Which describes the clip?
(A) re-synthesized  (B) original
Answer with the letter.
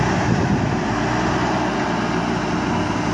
B